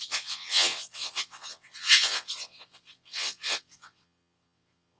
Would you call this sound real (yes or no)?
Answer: no